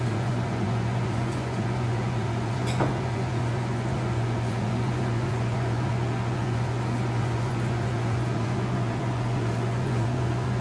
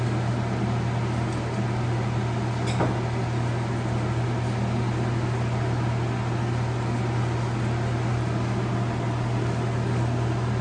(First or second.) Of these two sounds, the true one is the second